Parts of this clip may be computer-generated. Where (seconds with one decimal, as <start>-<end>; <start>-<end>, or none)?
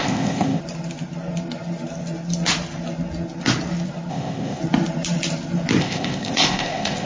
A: 0.0-0.6; 4.1-4.6; 5.8-7.1